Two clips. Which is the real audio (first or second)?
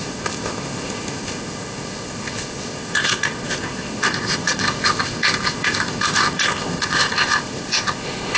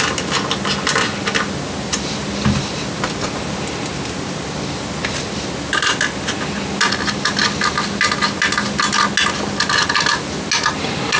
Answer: second